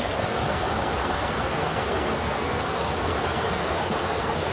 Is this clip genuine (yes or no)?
no